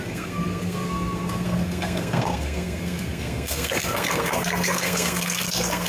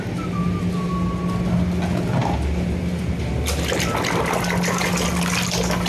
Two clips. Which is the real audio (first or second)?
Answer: second